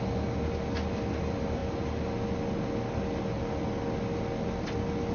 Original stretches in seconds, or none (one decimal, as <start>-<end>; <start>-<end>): 0.0-5.1